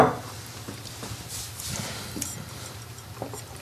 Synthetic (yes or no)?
no